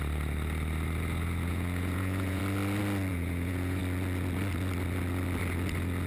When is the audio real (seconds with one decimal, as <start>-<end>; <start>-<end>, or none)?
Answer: 0.0-1.5; 2.4-3.1; 3.8-6.1